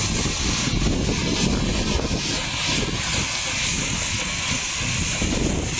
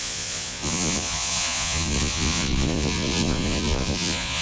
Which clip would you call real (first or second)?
first